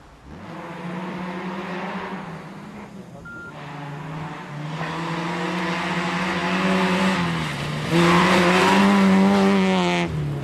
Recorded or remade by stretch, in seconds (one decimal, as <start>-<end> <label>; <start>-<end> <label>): 0.0-8.2 recorded; 8.2-8.8 remade; 8.8-10.4 recorded